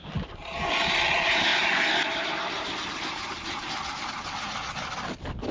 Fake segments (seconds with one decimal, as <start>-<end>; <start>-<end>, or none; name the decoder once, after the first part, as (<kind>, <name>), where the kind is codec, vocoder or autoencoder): 1.5-3.6 (vocoder, BigVGAN v2)